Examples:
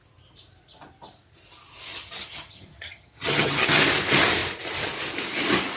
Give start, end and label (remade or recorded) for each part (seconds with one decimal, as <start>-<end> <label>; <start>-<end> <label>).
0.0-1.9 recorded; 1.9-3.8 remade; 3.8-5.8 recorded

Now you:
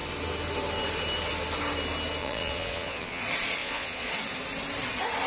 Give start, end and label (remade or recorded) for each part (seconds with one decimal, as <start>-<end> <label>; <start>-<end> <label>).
0.0-2.2 recorded; 2.2-3.2 remade; 3.2-3.6 recorded; 3.6-4.1 remade; 4.1-5.3 recorded

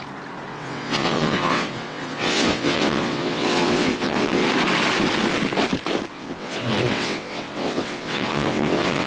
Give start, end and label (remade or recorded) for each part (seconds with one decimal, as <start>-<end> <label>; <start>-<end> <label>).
0.0-0.5 recorded; 0.5-4.5 remade; 4.5-6.1 recorded; 6.1-9.1 remade

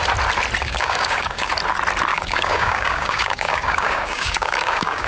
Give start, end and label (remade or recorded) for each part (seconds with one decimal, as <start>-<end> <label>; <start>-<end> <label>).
0.0-0.6 recorded; 0.6-1.5 remade; 1.5-2.1 recorded; 2.1-5.1 remade